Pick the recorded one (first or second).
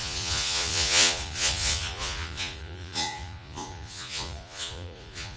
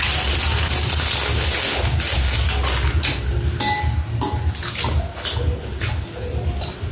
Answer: second